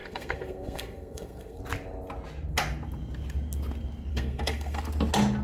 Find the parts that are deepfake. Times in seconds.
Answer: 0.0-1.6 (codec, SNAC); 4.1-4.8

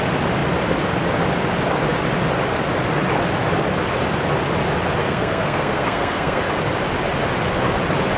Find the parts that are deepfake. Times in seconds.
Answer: 5.0-6.4 (codec, SNAC)

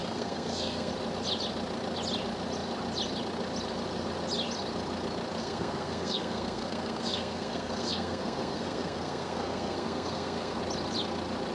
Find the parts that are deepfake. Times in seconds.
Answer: 0.0-0.9 (codec, SNAC); 5.4-10.6

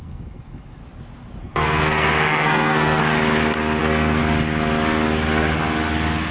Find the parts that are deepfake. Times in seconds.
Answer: 0.0-0.8 (codec, SNAC); 1.4-3.0; 3.8-4.2

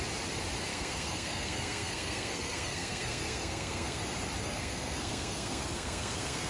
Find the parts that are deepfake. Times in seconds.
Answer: 0.7-4.0 (codec, SNAC); 4.4-6.5

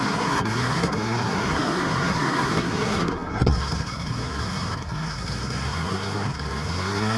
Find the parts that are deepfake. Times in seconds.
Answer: 0.0-7.2 (codec, SNAC)